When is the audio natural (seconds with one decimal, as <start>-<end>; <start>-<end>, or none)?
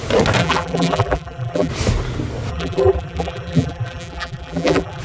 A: 0.0-0.4; 1.7-2.5